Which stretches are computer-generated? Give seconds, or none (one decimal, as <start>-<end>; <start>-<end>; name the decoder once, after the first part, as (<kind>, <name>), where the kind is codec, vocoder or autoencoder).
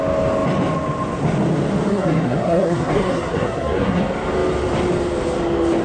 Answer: 1.9-4.0 (codec, SNAC)